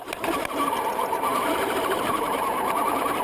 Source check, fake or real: fake